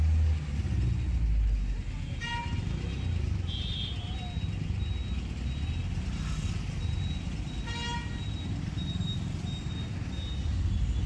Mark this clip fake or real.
real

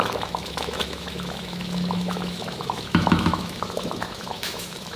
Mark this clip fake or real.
fake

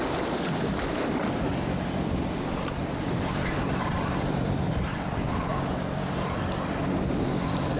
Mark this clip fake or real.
fake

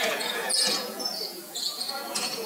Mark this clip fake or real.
fake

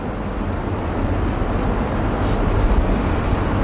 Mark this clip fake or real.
real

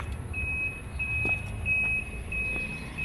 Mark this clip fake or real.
real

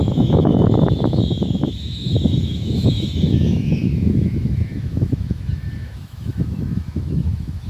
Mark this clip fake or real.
fake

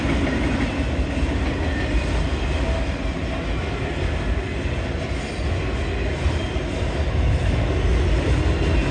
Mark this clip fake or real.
real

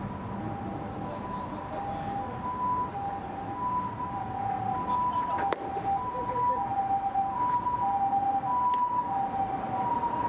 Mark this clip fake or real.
real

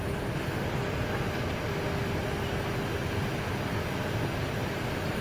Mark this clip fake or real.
real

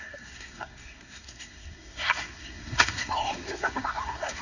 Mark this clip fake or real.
fake